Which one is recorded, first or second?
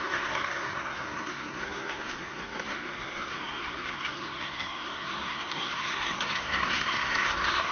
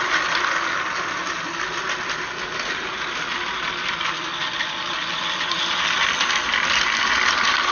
second